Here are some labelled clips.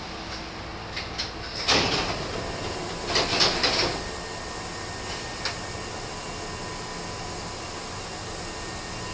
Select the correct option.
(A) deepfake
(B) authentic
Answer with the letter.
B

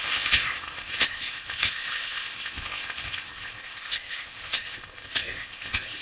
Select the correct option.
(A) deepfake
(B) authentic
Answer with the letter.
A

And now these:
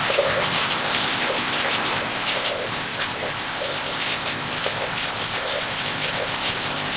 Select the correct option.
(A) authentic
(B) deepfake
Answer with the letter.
B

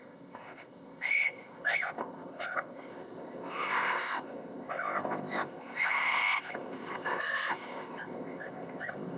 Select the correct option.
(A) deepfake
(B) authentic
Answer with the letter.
A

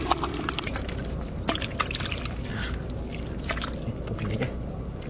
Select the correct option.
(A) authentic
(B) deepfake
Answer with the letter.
A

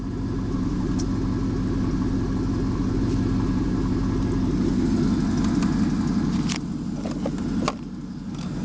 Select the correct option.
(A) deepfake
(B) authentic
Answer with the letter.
B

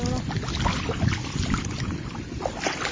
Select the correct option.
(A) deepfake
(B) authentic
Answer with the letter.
B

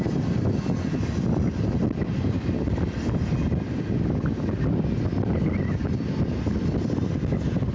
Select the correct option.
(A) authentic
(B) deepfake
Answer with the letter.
A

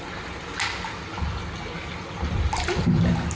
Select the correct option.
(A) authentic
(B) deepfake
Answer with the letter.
A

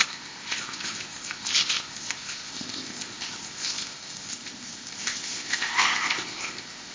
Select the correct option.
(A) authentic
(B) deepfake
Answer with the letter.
B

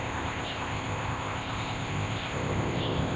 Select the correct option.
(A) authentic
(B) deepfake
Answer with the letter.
B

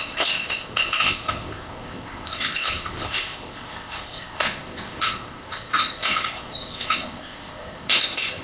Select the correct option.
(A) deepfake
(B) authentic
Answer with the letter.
A